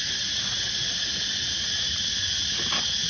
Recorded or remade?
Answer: recorded